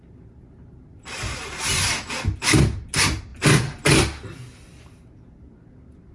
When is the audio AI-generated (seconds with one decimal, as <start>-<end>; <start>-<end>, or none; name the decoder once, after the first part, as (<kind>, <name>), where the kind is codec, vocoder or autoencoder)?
none